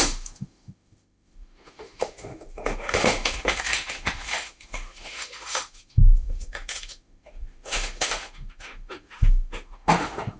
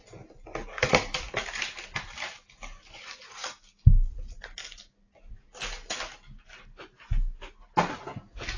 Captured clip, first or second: second